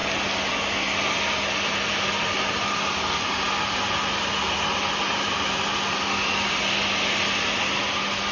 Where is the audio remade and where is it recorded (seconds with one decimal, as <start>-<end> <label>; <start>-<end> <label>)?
0.0-8.3 recorded